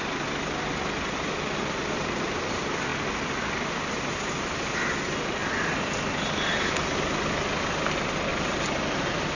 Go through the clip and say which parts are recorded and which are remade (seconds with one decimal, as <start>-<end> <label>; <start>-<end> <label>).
0.0-8.3 recorded; 8.3-9.3 remade